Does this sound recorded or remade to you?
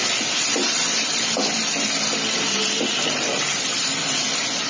remade